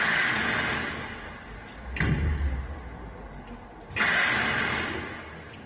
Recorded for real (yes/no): yes